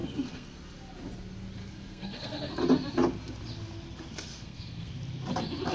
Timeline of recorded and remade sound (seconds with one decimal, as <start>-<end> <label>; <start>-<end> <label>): 0.0-0.6 remade; 0.6-1.6 recorded; 1.6-2.5 remade; 2.5-4.3 recorded; 4.3-4.9 remade; 4.9-5.7 recorded